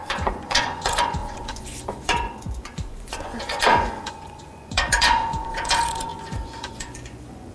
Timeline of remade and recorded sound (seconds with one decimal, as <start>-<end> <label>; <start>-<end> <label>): 0.0-7.5 remade